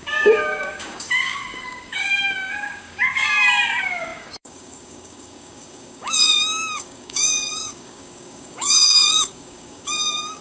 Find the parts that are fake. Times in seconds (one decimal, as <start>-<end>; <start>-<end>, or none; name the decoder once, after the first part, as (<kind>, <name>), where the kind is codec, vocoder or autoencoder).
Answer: 0.0-10.4 (codec, DAC)